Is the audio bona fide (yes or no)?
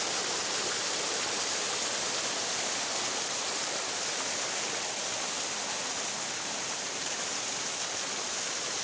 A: yes